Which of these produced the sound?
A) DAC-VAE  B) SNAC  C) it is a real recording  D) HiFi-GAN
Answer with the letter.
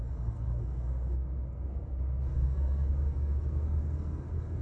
B